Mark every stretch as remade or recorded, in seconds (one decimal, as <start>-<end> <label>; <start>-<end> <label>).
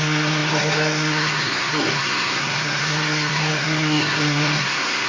0.0-5.1 remade